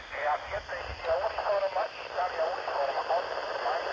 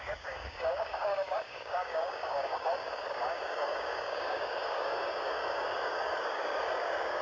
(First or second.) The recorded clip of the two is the first